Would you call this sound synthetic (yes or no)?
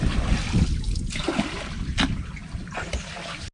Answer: no